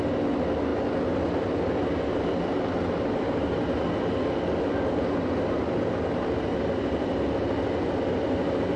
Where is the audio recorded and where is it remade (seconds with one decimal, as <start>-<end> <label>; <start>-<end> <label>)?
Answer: 0.0-8.8 recorded